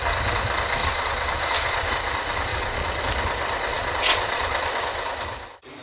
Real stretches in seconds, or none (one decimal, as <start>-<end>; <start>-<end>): 0.0-0.8; 1.9-2.5; 3.0-3.7; 4.7-5.8